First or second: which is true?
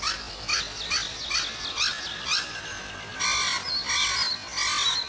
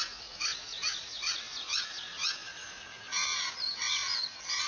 first